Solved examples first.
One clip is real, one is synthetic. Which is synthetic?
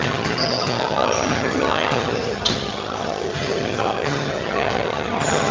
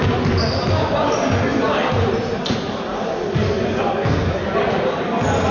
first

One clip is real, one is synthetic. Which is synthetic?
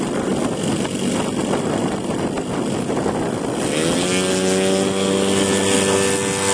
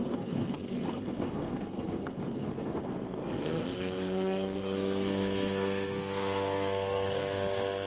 second